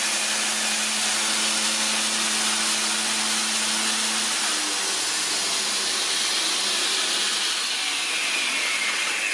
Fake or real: real